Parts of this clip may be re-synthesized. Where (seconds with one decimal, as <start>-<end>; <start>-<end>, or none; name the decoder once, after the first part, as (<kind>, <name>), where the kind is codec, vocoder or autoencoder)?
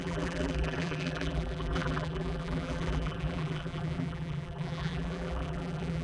0.0-6.0 (vocoder, BigVGAN v2)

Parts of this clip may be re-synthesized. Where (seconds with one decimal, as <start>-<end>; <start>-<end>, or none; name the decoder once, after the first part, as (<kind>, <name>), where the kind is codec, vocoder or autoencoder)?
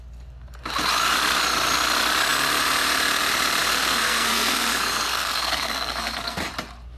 3.6-6.5 (codec, SNAC)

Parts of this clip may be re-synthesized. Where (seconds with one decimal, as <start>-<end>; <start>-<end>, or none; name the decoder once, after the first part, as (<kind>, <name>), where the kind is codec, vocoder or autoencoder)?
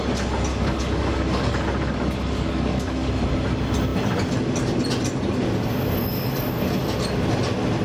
0.5-3.1 (codec, DAC)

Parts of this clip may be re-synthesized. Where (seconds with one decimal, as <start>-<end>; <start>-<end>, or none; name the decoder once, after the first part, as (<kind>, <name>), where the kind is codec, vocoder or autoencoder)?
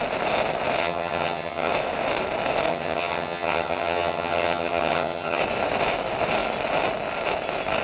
0.8-1.7 (vocoder, HiFi-GAN); 2.7-5.4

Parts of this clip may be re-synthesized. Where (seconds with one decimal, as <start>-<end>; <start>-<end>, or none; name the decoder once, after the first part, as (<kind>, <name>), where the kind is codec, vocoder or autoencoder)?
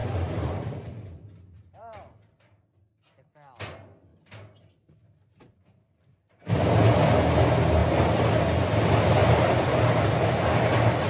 0.0-2.6 (vocoder, BigVGAN v2); 4.1-6.9; 9.2-9.8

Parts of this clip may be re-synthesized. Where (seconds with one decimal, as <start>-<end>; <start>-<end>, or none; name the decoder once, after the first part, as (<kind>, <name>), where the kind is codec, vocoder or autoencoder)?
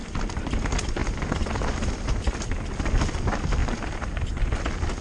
0.0-0.5 (vocoder, BigVGAN v2); 1.0-2.1; 3.6-4.6